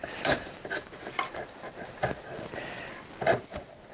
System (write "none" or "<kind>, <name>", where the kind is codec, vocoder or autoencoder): vocoder, BigVGAN v2